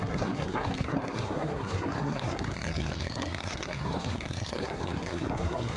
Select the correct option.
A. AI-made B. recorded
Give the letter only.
A